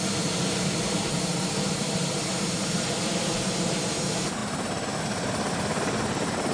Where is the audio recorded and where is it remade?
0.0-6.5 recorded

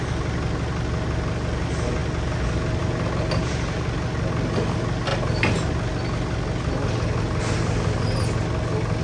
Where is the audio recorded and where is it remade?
0.0-9.0 recorded

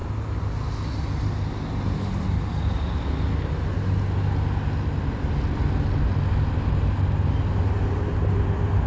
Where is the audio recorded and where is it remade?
0.0-8.9 recorded